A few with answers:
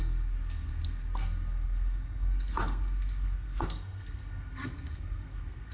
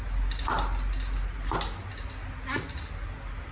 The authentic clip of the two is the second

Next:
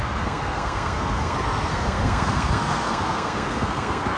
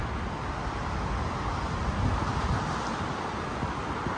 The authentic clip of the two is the second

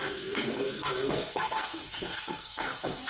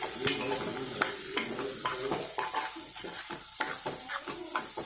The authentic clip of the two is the second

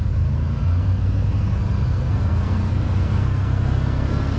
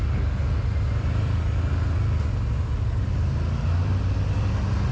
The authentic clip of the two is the second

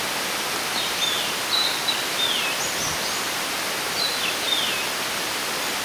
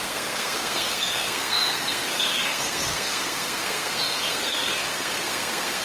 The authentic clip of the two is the first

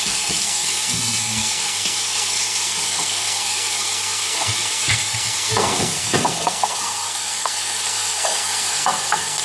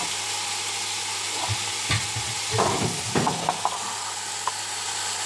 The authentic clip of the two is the second